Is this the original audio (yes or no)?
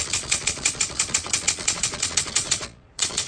no